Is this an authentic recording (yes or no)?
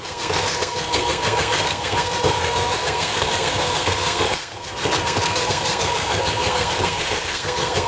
no